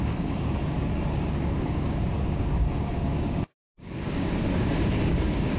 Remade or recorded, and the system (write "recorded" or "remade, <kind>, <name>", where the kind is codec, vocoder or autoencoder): remade, codec, DAC